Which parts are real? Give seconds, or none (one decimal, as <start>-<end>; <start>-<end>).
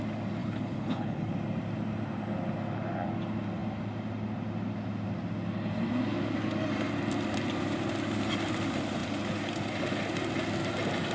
0.0-0.4; 1.3-11.1